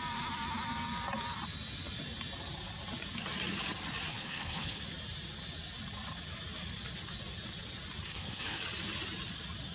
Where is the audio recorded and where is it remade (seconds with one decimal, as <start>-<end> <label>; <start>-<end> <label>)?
0.0-4.1 recorded; 4.1-4.8 remade; 4.8-8.1 recorded; 8.1-8.6 remade; 8.6-9.7 recorded